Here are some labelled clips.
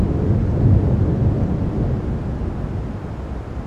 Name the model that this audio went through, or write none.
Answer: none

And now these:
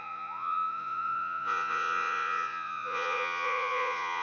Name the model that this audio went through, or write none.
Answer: vocoder, Vocos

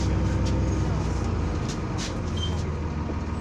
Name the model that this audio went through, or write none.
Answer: none